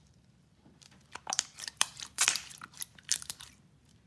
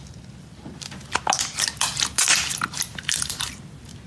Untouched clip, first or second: second